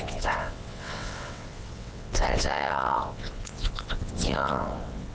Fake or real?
fake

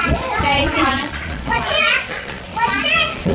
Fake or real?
fake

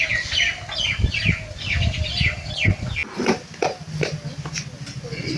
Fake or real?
real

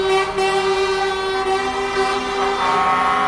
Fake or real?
real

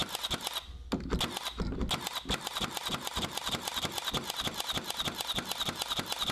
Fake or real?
real